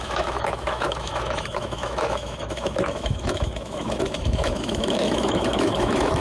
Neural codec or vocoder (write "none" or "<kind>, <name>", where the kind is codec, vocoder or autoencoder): autoencoder, DAC-VAE